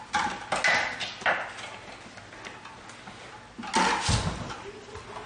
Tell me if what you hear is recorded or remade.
recorded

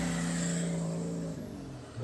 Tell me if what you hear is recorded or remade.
recorded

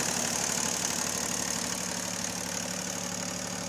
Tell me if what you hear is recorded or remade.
recorded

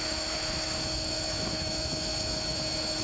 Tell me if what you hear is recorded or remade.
remade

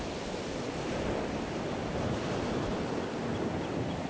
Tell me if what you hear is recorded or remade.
recorded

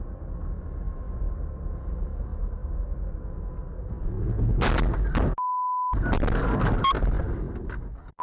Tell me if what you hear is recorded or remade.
recorded